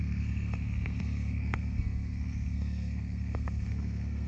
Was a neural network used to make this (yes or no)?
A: yes